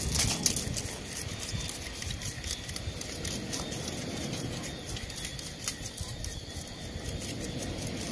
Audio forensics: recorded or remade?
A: recorded